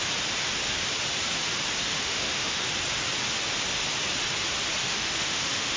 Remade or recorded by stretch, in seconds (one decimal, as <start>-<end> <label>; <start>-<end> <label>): 0.0-1.9 recorded; 1.9-2.7 remade; 2.7-4.8 recorded; 4.8-5.8 remade

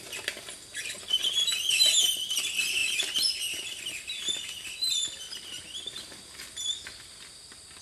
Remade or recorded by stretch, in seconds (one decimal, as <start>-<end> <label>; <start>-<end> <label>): 0.0-7.8 recorded

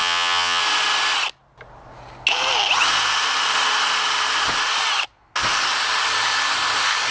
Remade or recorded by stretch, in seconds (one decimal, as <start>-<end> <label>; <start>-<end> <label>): 0.0-0.6 remade; 0.6-7.1 recorded

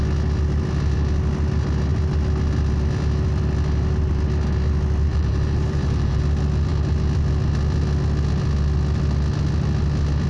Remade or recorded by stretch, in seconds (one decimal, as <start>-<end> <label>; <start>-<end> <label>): 0.0-5.1 recorded; 5.1-6.2 remade; 6.2-10.3 recorded

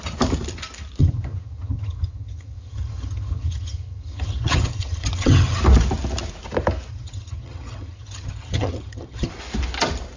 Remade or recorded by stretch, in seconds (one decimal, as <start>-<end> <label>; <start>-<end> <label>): 0.0-1.0 recorded; 1.0-5.6 remade; 5.6-6.9 recorded; 6.9-9.3 remade; 9.3-10.2 recorded

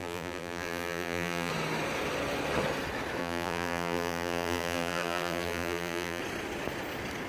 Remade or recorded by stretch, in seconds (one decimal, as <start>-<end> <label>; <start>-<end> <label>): 0.0-1.5 remade; 1.5-3.2 recorded; 3.2-6.2 remade; 6.2-7.3 recorded

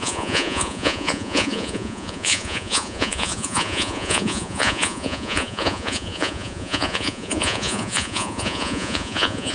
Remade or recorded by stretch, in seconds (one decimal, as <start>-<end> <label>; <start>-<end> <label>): 0.0-9.5 remade

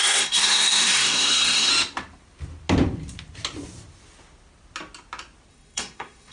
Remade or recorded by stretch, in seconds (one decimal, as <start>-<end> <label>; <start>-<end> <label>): 0.0-1.7 remade; 1.7-5.5 recorded; 5.5-6.3 remade